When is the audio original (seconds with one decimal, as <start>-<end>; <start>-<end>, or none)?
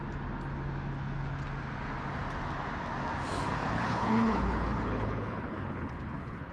0.0-3.6